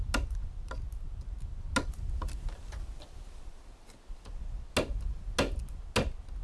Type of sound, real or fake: real